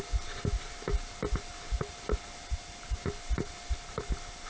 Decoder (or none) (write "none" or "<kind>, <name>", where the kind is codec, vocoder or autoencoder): none